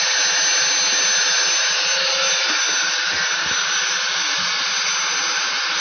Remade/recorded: recorded